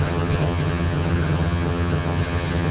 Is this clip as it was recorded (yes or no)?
no